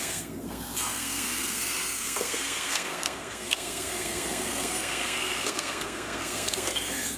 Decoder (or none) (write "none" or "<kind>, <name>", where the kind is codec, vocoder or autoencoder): codec, SNAC